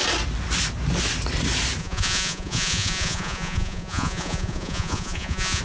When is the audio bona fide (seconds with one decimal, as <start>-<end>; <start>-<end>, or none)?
0.0-1.8